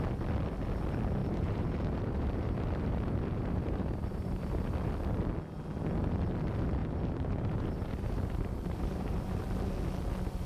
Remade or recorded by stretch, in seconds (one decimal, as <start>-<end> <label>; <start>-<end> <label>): 0.0-1.2 recorded; 1.2-4.9 remade; 4.9-6.8 recorded; 6.8-9.7 remade; 9.7-10.5 recorded